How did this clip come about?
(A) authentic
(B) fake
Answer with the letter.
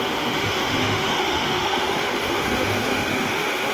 B